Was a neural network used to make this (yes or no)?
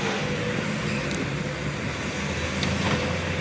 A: no